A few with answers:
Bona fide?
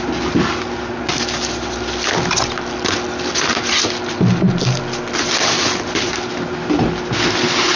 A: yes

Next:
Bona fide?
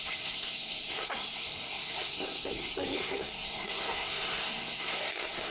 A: no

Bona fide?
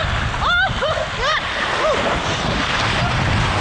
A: yes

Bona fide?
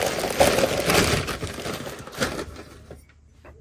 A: yes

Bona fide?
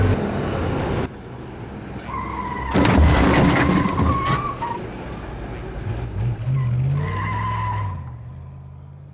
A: yes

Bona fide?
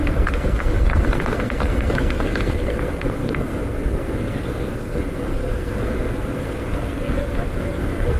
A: no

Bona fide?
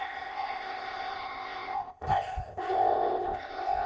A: no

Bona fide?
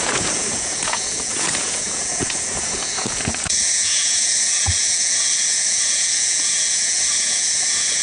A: no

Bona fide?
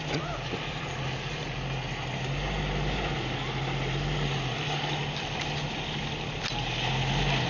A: yes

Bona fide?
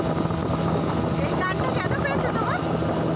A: yes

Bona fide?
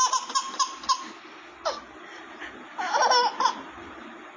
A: yes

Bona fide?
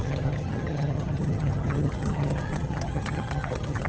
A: no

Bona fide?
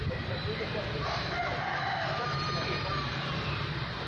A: no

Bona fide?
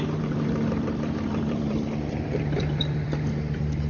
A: no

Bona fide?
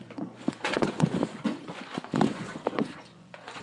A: no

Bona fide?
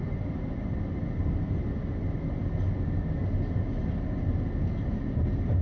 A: yes